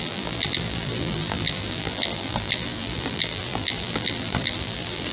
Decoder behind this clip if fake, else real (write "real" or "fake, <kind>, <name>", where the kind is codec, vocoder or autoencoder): fake, vocoder, BigVGAN v2